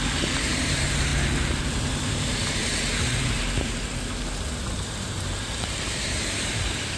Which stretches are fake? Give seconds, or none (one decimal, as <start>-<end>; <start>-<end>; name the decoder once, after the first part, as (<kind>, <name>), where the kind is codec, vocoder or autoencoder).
0.0-1.1 (vocoder, BigVGAN v2); 1.6-2.6; 3.2-3.9; 4.8-7.0